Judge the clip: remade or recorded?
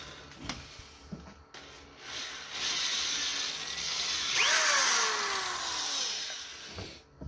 recorded